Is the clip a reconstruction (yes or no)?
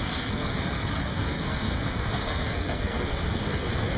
yes